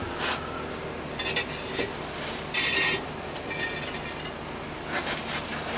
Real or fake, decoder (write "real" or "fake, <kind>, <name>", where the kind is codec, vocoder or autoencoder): real